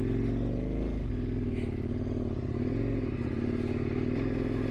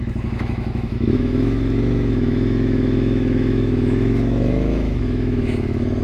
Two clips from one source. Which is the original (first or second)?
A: first